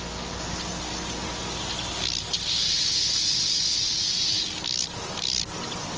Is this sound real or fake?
real